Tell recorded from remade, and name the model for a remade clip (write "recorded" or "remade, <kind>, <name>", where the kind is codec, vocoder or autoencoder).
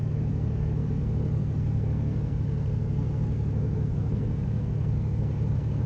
remade, codec, SNAC